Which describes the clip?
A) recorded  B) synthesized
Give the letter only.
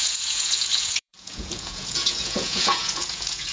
B